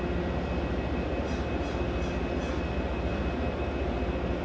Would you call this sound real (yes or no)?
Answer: yes